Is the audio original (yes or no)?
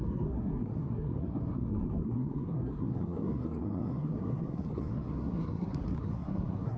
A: no